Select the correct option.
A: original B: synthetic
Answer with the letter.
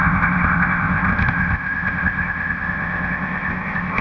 B